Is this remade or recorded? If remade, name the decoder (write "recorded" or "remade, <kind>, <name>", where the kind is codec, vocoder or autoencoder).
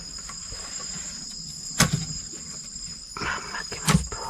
recorded